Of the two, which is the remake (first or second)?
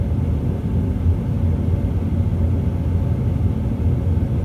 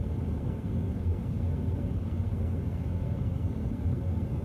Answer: second